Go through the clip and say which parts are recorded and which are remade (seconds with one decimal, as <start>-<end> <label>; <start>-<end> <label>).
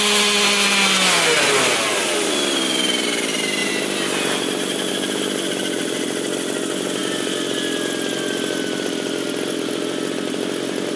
0.0-11.0 recorded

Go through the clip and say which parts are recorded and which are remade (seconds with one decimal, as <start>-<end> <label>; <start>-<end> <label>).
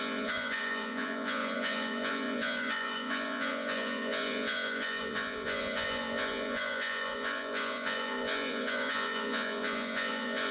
0.0-10.5 remade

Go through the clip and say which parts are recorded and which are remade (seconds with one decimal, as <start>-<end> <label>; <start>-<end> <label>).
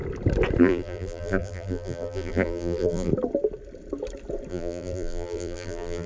0.0-0.6 recorded; 0.6-3.1 remade; 3.1-4.5 recorded; 4.5-6.1 remade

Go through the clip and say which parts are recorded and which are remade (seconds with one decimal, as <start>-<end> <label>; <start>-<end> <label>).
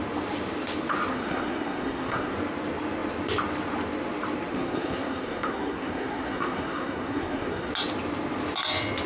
0.0-1.1 recorded; 1.1-2.3 remade; 2.3-4.5 recorded; 4.5-7.7 remade; 7.7-9.1 recorded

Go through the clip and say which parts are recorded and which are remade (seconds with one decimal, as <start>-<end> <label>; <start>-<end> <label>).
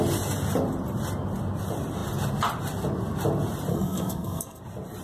0.0-3.7 recorded; 3.7-4.6 remade; 4.6-5.0 recorded